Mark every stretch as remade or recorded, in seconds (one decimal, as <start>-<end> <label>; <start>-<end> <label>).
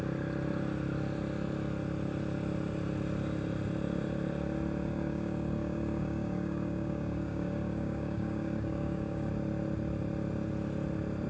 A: 0.0-4.9 recorded; 4.9-9.3 remade; 9.3-11.3 recorded